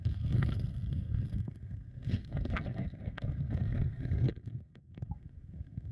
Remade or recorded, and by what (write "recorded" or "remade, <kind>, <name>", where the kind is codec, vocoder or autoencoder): remade, codec, SNAC